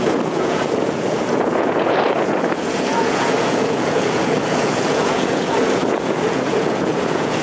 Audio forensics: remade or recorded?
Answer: remade